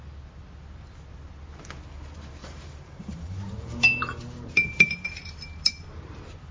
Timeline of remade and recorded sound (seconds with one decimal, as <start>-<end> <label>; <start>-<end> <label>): 0.0-2.4 recorded; 2.4-6.1 remade; 6.1-6.5 recorded